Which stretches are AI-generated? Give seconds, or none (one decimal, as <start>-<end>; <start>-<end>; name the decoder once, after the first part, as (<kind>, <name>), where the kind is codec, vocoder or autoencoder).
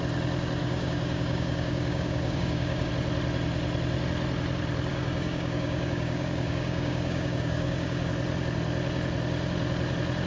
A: 0.6-2.9 (codec, DAC); 4.9-8.1